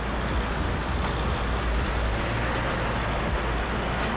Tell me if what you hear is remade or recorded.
recorded